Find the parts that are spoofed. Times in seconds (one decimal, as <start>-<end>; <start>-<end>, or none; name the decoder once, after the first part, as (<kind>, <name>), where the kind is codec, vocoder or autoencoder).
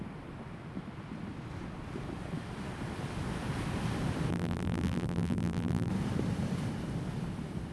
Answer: 4.3-5.9 (vocoder, BigVGAN v2)